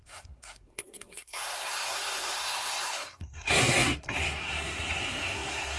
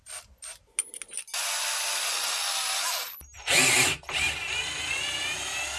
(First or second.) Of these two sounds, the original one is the second